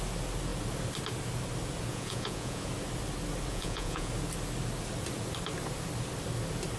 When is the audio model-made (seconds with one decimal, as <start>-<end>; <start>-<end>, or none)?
1.9-2.7; 3.5-4.1